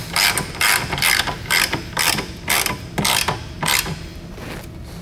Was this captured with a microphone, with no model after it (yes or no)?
yes